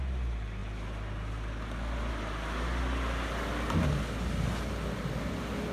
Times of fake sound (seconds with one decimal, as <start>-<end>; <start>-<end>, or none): none